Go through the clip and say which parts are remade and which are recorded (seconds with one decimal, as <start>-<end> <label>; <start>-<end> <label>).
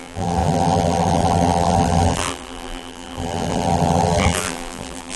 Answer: 0.0-5.2 remade